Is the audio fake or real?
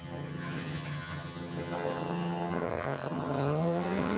fake